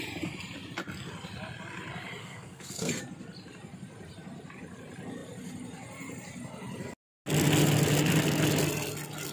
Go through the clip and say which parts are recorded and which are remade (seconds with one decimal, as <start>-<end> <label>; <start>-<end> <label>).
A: 0.0-2.2 recorded; 2.2-3.0 remade; 3.0-9.3 recorded

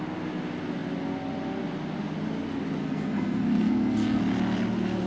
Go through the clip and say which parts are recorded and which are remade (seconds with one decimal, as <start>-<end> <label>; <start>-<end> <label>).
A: 0.0-2.8 recorded; 2.8-4.2 remade; 4.2-5.1 recorded

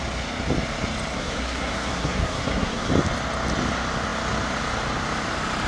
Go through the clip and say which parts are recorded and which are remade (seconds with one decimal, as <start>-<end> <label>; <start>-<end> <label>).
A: 0.0-1.1 recorded; 1.1-2.9 remade; 2.9-5.7 recorded

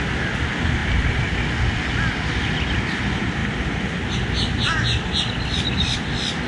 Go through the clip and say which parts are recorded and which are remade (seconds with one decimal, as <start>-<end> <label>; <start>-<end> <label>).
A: 0.0-6.5 recorded

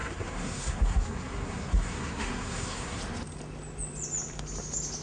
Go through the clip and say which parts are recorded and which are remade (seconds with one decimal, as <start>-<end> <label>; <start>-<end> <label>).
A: 0.0-3.0 remade; 3.0-5.0 recorded